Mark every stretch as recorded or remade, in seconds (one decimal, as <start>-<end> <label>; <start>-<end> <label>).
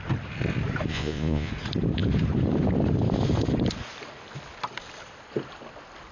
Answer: 0.0-0.9 recorded; 0.9-1.5 remade; 1.5-6.1 recorded